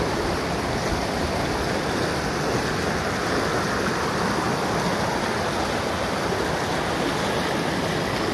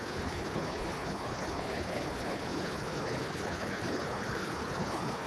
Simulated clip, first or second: second